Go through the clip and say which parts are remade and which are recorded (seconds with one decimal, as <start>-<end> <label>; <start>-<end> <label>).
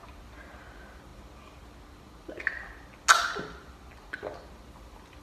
0.0-5.2 recorded